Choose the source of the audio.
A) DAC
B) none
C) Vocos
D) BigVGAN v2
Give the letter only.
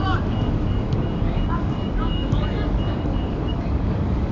A